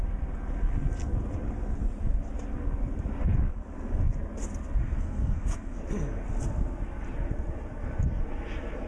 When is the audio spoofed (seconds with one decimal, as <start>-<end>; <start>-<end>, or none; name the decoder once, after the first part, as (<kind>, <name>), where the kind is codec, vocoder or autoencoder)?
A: 4.8-5.8 (codec, SNAC)